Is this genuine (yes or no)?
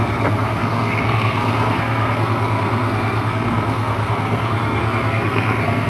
no